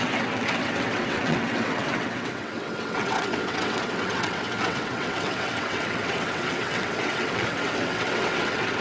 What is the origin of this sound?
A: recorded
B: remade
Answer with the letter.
B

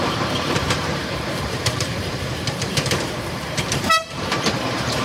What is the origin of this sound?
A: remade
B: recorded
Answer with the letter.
A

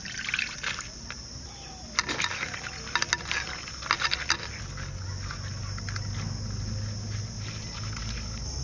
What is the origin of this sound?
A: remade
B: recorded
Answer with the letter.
B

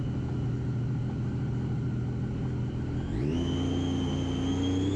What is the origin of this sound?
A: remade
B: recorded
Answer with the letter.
B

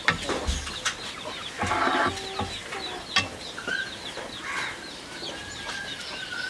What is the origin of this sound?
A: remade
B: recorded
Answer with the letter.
B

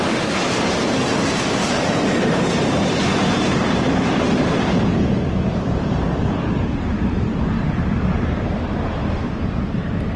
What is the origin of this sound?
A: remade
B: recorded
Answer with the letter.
A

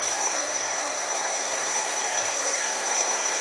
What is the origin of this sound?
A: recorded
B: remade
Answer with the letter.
B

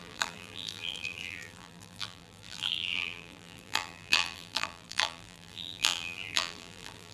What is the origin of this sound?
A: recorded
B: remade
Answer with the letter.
B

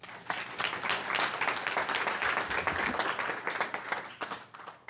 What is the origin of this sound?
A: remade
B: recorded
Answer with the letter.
B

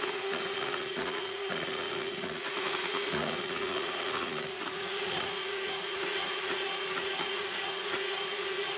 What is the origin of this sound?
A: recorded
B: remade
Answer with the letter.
B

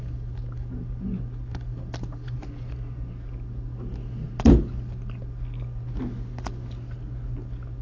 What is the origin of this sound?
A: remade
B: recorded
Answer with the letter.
B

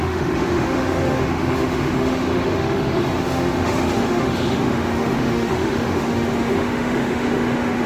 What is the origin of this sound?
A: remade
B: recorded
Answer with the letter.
A